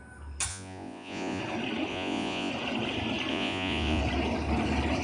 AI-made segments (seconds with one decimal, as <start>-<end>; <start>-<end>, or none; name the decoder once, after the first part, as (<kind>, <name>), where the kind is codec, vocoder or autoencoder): 0.5-1.4 (vocoder, Vocos); 1.9-2.5; 3.3-4.0